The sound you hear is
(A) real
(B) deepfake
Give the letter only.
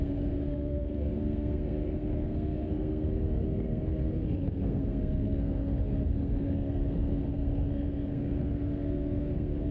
B